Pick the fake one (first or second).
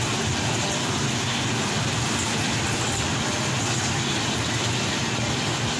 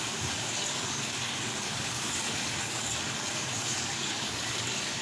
second